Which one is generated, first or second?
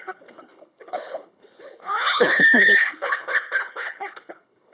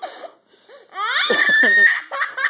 first